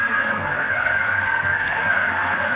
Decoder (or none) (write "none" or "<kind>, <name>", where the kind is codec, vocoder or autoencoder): codec, SNAC